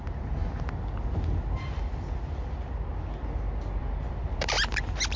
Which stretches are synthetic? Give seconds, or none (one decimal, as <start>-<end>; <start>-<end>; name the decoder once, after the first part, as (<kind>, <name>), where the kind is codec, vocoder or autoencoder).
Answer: 3.8-4.8 (vocoder, BigVGAN v2)